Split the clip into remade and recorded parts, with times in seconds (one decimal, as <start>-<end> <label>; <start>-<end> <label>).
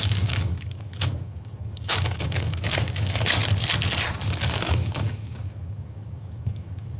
0.0-3.4 remade; 3.4-4.3 recorded; 4.3-7.0 remade